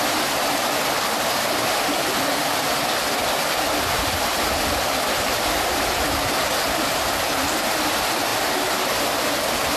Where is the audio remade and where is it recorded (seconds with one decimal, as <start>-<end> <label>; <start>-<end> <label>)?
0.0-3.2 recorded; 3.2-5.4 remade; 5.4-9.8 recorded